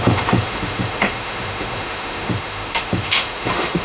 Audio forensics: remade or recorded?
remade